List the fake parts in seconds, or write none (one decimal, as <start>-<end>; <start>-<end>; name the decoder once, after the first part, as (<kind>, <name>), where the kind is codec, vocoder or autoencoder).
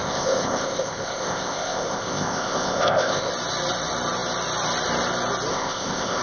0.0-3.3 (codec, ZipCodec); 5.5-6.2